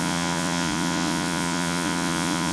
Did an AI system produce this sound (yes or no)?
yes